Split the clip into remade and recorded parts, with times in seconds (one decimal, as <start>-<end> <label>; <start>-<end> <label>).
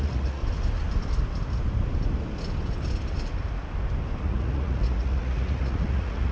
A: 0.0-0.4 remade; 0.4-4.2 recorded; 4.2-6.3 remade